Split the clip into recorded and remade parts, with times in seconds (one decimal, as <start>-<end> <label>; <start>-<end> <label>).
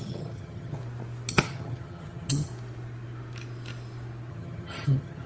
0.0-0.8 remade; 0.8-1.3 recorded; 1.3-2.5 remade; 2.5-4.3 recorded; 4.3-5.3 remade